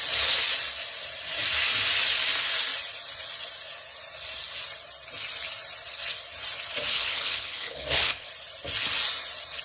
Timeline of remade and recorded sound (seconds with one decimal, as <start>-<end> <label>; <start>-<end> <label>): 0.0-6.9 recorded; 6.9-8.3 remade; 8.3-9.6 recorded